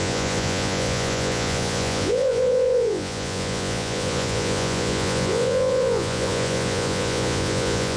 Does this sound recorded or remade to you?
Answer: remade